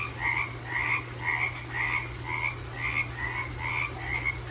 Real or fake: real